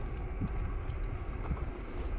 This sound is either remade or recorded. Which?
recorded